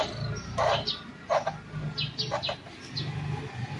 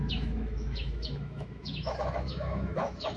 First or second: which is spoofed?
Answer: second